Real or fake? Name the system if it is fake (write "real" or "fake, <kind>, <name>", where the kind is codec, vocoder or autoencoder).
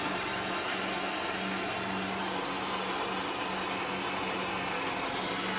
real